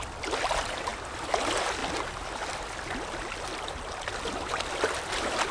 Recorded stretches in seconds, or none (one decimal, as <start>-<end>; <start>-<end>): 0.0-1.8; 5.1-5.5